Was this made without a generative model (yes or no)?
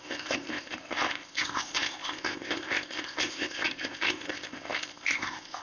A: no